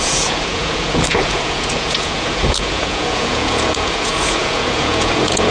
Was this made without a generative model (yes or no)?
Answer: no